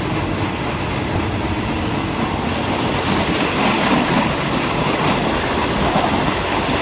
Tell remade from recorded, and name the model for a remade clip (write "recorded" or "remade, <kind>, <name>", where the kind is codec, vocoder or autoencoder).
recorded